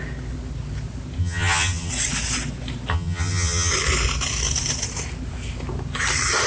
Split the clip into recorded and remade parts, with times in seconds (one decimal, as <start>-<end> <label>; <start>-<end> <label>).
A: 0.0-1.2 recorded; 1.2-1.9 remade; 1.9-2.9 recorded; 2.9-3.7 remade; 3.7-6.5 recorded